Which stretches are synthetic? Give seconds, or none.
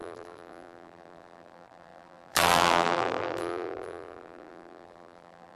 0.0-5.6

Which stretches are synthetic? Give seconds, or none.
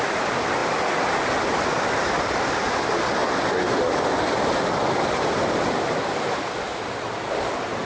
none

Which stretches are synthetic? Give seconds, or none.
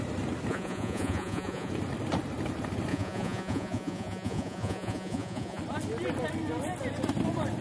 0.5-1.7; 2.9-5.6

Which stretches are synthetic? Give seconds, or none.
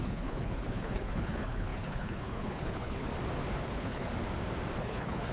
0.0-3.1; 3.6-4.1; 4.8-5.3